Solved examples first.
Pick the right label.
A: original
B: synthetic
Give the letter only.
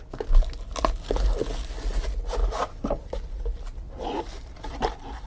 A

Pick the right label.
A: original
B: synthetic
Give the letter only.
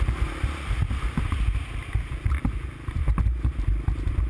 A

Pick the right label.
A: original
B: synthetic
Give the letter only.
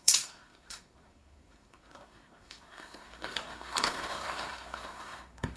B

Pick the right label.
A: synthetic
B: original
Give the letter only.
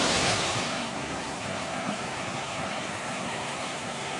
A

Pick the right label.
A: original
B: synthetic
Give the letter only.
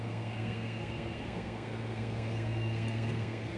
B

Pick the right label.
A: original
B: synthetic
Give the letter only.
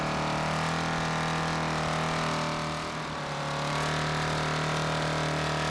A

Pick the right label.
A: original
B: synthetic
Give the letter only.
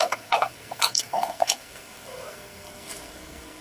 B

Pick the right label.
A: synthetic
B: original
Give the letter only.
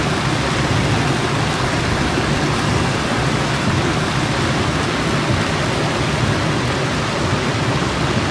B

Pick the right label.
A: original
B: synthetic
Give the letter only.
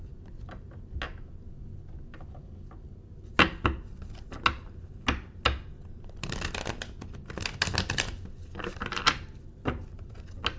A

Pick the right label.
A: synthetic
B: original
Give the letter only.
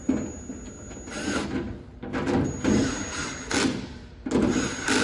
B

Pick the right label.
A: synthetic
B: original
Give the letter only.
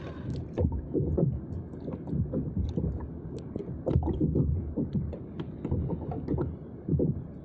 B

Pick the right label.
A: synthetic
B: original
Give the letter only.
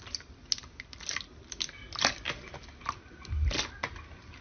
B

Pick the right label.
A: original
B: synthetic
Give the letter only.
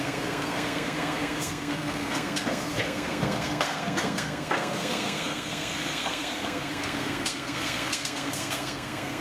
B